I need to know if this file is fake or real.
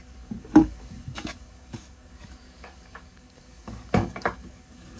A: fake